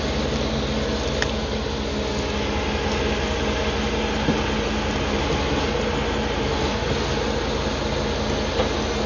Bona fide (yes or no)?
yes